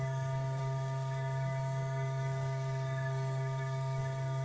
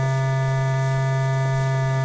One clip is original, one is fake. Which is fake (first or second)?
first